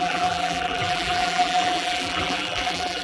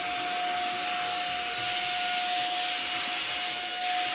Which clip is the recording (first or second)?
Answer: second